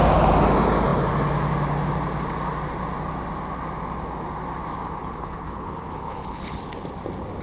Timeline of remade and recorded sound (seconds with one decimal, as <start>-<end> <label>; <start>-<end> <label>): 0.0-5.0 recorded; 5.0-6.6 remade; 6.6-7.4 recorded